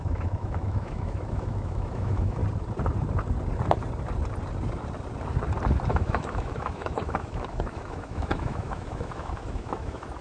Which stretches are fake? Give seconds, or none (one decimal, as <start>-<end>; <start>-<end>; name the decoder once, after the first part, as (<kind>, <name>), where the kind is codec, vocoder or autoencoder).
0.0-2.4 (autoencoder, DAC-VAE); 5.9-10.2